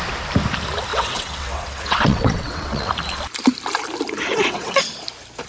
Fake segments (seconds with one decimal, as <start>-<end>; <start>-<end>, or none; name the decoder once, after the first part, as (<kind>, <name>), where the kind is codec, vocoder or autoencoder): 0.9-2.9 (vocoder, WaveNeXt); 4.3-4.8

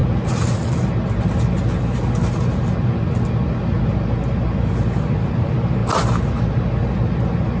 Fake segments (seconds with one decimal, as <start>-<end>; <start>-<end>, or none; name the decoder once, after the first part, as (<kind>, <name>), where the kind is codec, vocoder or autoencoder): none

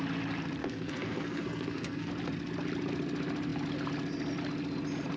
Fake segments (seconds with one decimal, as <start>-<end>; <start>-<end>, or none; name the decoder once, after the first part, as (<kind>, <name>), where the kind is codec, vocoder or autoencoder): 0.6-2.1 (codec, SNAC)

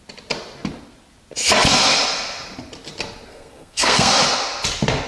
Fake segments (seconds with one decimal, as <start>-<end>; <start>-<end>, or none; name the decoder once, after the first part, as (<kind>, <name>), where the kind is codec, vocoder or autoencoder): 3.3-4.1 (codec, SNAC)

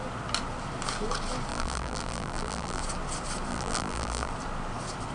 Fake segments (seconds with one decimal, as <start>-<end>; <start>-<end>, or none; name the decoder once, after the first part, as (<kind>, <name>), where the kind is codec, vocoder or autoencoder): 1.5-2.8 (vocoder, BigVGAN v2); 3.5-4.3

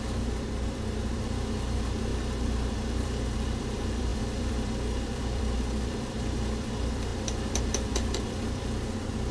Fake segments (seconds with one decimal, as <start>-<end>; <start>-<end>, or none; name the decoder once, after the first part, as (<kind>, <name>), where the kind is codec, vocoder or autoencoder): 0.0-2.1 (vocoder, BigVGAN v2); 2.7-9.3

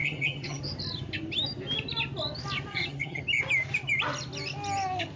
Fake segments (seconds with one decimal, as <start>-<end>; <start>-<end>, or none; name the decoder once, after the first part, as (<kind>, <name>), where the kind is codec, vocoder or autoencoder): 0.0-0.6 (vocoder, HiFi-GAN); 2.7-3.2